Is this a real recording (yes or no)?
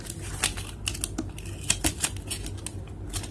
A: yes